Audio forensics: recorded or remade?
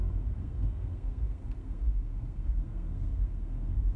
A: remade